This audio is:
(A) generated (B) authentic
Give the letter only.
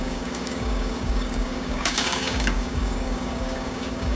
A